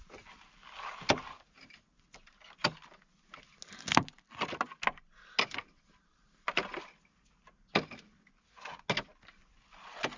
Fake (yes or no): no